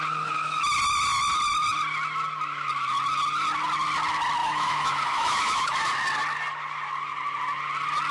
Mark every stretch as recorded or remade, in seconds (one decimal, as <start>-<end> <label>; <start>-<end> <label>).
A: 0.0-4.4 recorded; 4.4-5.9 remade; 5.9-8.1 recorded